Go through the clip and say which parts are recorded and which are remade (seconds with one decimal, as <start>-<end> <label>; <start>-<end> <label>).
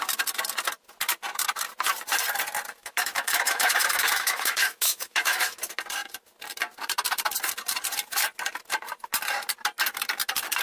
0.0-2.8 recorded; 2.8-5.6 remade; 5.6-10.6 recorded